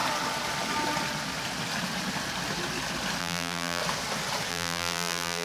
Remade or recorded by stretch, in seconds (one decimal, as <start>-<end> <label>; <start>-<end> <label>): 0.0-3.2 recorded; 3.2-3.8 remade; 3.8-4.5 recorded; 4.5-5.4 remade